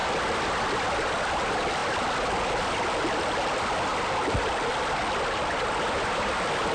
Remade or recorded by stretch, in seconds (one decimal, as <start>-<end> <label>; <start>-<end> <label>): 0.0-6.7 recorded